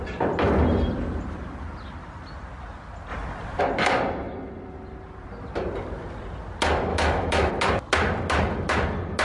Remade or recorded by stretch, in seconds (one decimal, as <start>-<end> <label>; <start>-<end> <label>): 0.0-6.9 recorded; 6.9-7.5 remade; 7.5-9.2 recorded

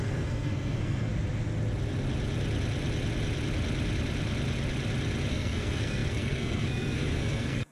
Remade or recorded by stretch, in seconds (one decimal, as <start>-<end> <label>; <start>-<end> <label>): 0.0-1.1 remade; 1.1-5.3 recorded; 5.3-7.7 remade

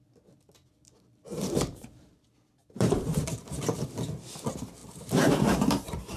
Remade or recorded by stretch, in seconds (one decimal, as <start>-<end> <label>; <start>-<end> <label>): 0.0-1.3 recorded; 1.3-2.2 remade; 2.2-2.6 recorded; 2.6-3.2 remade; 3.2-4.8 recorded; 4.8-6.2 remade

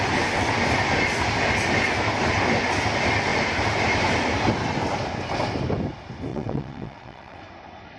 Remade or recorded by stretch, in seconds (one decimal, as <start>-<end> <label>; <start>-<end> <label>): 0.0-6.3 recorded; 6.3-7.4 remade; 7.4-8.0 recorded

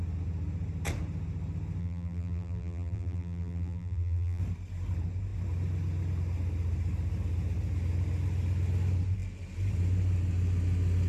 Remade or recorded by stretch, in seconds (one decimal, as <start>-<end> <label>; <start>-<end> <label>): 0.0-1.8 recorded; 1.8-4.4 remade; 4.4-11.1 recorded

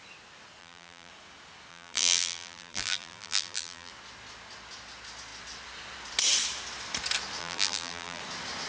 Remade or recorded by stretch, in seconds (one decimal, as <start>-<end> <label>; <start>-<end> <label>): 0.0-0.6 recorded; 0.6-1.1 remade; 1.1-1.7 recorded; 1.7-3.9 remade; 3.9-7.4 recorded; 7.4-8.2 remade; 8.2-8.7 recorded

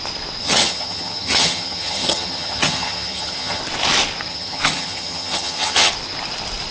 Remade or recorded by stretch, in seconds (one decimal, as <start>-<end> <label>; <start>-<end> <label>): 0.0-0.4 recorded; 0.4-3.6 remade; 3.6-4.3 recorded; 4.3-5.9 remade; 5.9-6.7 recorded